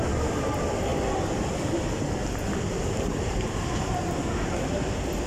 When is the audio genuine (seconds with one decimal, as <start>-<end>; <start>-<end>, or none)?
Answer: 0.0-5.3